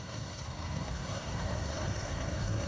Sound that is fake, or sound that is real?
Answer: fake